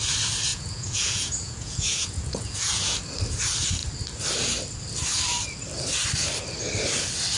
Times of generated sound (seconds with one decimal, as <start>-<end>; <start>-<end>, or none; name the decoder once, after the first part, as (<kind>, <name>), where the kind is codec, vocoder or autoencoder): 0.5-3.0 (vocoder, Vocos)